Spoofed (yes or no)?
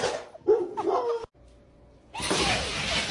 no